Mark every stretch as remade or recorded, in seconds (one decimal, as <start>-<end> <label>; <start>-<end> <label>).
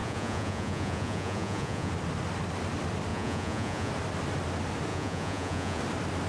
0.0-1.9 remade; 1.9-3.1 recorded; 3.1-3.9 remade; 3.9-4.9 recorded; 4.9-5.8 remade; 5.8-6.3 recorded